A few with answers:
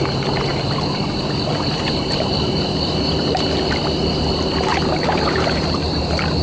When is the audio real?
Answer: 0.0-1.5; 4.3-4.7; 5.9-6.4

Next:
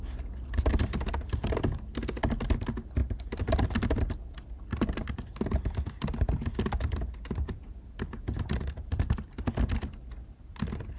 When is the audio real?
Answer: 0.0-11.0

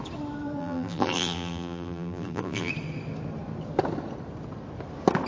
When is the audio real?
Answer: 0.0-0.6; 2.7-5.3

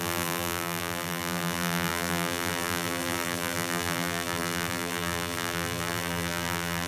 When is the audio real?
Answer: none

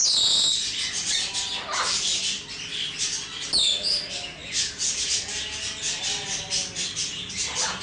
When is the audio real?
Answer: 0.0-7.8

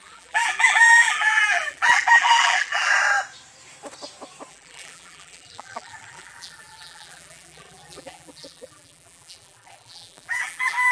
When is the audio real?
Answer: 2.9-4.5

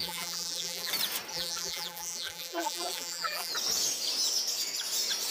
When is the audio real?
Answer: 0.9-1.3; 3.5-5.3